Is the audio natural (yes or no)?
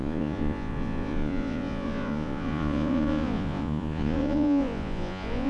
no